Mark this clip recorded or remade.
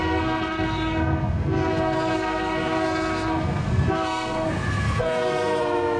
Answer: remade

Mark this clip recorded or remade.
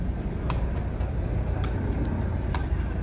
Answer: recorded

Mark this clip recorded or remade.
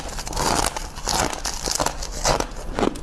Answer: recorded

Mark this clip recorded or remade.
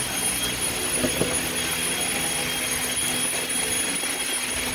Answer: recorded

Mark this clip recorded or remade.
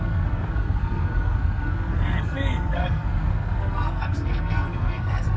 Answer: remade